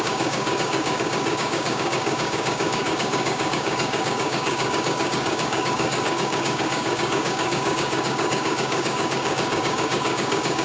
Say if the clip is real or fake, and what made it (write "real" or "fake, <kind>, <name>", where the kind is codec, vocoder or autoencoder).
fake, codec, DAC